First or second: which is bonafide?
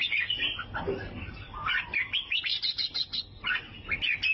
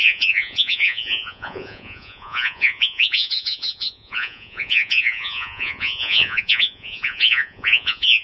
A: first